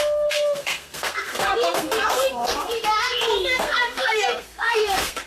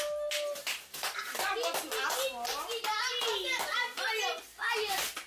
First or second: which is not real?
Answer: first